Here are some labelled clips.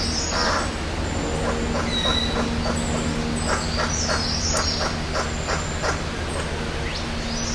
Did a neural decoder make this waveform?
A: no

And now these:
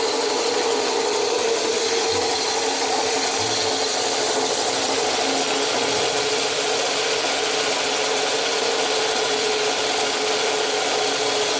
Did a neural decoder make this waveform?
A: no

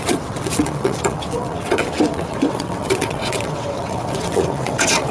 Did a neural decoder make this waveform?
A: yes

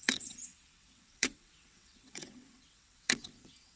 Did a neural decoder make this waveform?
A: yes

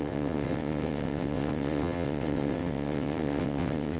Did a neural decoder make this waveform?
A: yes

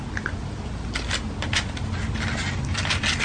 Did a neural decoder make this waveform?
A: no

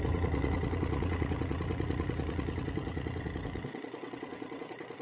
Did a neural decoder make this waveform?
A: yes